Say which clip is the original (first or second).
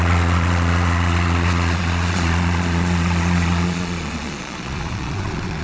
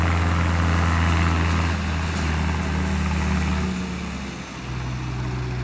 second